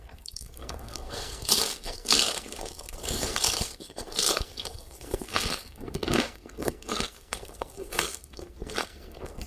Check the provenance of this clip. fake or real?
fake